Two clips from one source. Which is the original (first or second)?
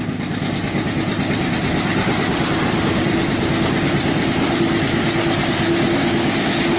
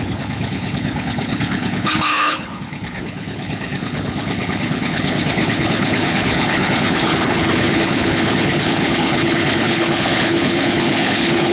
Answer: first